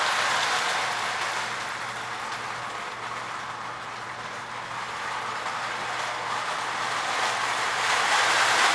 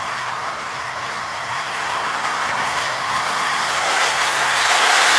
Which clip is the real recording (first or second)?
first